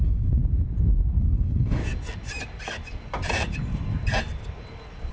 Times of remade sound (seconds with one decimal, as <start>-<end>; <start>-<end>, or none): 0.0-0.4; 1.2-1.8